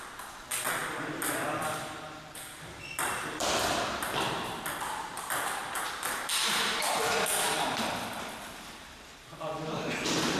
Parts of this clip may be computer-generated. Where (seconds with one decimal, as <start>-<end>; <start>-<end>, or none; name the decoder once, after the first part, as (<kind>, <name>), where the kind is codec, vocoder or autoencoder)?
0.0-10.4 (vocoder, BigVGAN v2)

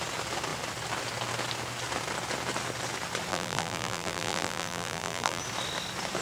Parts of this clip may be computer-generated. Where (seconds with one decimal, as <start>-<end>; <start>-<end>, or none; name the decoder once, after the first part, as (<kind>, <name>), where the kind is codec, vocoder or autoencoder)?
3.3-5.4 (vocoder, BigVGAN v2)

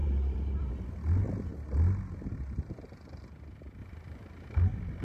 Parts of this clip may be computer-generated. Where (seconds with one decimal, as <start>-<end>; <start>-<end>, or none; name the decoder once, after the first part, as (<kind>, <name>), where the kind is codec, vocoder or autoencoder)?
0.0-0.7 (vocoder, BigVGAN v2); 3.8-4.6

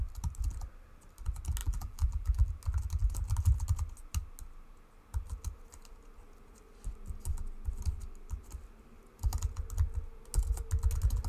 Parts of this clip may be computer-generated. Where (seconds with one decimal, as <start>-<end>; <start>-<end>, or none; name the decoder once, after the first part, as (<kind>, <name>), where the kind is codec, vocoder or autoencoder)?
1.6-2.5 (vocoder, BigVGAN v2)

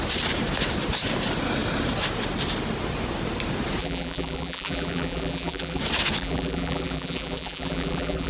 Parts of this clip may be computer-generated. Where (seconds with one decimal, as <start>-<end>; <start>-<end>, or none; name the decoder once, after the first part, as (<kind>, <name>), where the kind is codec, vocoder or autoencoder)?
3.8-5.8 (vocoder, BigVGAN v2); 6.2-8.3

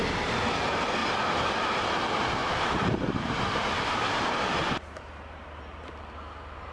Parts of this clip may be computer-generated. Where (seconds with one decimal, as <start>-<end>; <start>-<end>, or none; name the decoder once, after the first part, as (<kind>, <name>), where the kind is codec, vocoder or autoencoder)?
2.4-5.9 (vocoder, BigVGAN v2)